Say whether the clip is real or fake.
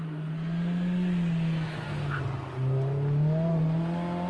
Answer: real